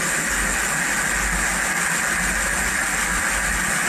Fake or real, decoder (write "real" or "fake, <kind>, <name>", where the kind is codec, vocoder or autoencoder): real